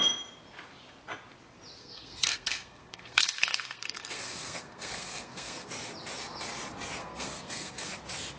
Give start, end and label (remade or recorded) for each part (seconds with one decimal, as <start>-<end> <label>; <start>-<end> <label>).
0.0-1.8 recorded; 1.8-5.7 remade; 5.7-7.0 recorded; 7.0-7.9 remade; 7.9-8.4 recorded